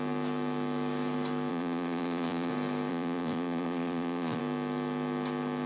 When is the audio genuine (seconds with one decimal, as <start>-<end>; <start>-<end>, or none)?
0.0-1.5; 2.5-2.9; 4.4-5.7